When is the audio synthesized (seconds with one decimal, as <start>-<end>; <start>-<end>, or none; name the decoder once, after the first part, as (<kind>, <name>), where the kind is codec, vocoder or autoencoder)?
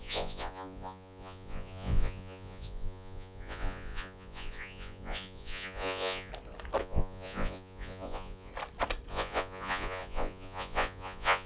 0.0-6.3 (vocoder, Vocos); 6.8-8.5; 9.1-11.5